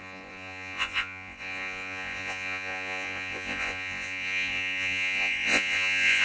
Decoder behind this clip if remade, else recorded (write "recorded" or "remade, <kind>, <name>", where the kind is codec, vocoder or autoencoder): remade, vocoder, Vocos